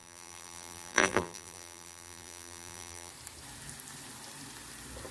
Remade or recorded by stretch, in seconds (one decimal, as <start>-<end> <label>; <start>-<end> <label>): 0.0-3.1 remade; 3.1-5.1 recorded

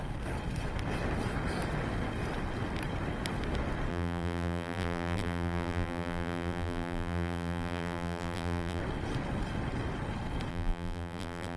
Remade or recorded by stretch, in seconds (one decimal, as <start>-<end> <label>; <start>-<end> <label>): 0.0-3.9 recorded; 3.9-8.8 remade; 8.8-10.5 recorded; 10.5-11.6 remade

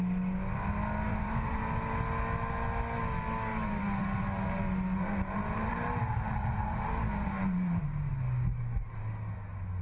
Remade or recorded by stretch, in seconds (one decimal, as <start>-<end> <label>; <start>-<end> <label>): 0.0-1.1 recorded; 1.1-1.6 remade; 1.6-3.5 recorded; 3.5-8.1 remade; 8.1-9.8 recorded

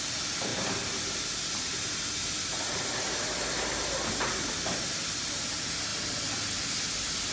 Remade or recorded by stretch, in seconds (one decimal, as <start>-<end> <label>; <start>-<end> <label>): 0.0-7.3 recorded

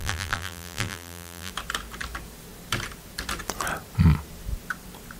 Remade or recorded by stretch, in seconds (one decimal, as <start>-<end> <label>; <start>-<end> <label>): 0.0-1.5 remade; 1.5-5.2 recorded

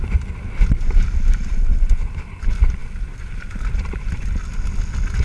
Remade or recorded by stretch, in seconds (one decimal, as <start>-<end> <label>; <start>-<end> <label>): 0.0-5.2 recorded